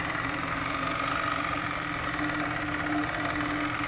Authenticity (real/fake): real